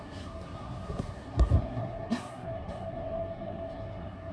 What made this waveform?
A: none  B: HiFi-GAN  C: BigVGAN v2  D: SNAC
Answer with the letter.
D